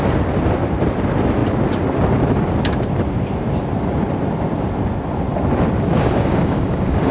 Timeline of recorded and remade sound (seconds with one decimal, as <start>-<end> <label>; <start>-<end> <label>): 0.0-5.9 recorded; 5.9-7.1 remade